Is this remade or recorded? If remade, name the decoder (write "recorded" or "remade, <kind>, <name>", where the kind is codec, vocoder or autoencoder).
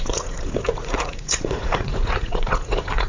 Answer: remade, vocoder, Vocos